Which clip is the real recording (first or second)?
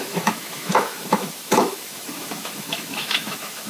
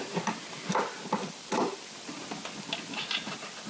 second